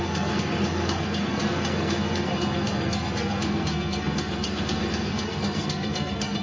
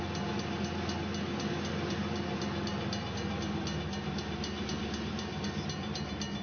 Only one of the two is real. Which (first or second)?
second